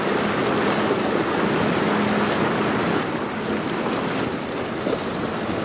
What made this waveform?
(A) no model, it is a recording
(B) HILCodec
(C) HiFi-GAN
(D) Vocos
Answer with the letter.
A